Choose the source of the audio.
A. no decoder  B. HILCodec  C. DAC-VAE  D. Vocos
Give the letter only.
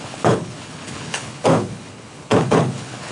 B